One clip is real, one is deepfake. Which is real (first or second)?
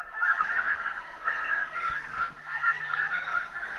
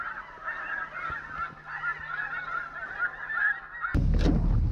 second